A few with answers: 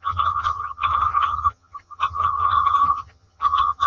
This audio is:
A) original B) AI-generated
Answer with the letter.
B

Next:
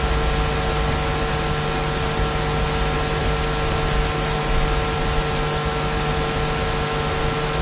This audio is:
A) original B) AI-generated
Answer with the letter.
A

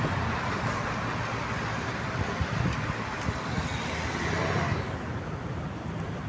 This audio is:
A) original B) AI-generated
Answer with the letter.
A